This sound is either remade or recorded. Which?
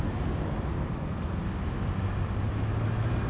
recorded